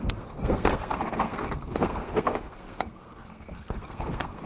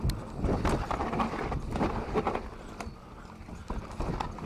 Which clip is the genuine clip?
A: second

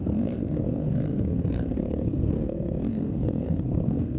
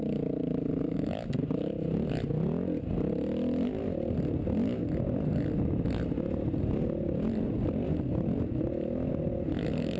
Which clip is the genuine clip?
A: second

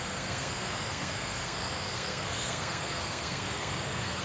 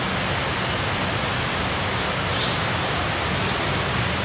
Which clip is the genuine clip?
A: second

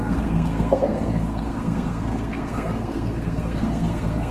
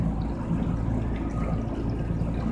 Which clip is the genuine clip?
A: second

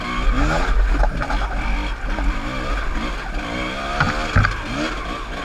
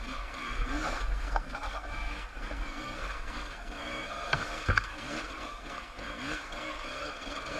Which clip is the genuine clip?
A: first